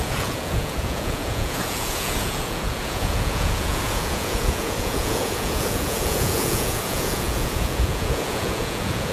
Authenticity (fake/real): fake